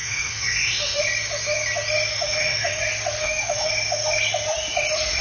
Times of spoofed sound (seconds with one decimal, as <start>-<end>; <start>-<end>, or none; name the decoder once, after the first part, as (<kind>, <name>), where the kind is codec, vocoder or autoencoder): 0.0-1.0 (autoencoder, DAC-VAE); 2.1-2.8; 3.2-3.7